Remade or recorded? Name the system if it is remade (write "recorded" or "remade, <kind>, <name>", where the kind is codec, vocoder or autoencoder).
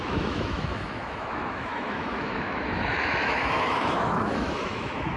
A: remade, autoencoder, DAC-VAE